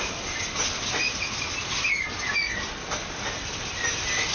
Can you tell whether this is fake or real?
real